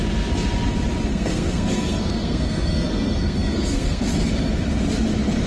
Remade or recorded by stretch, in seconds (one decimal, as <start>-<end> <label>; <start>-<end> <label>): 0.0-1.1 recorded; 1.1-4.0 remade; 4.0-5.5 recorded